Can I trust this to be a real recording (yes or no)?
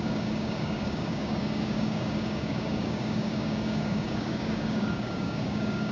no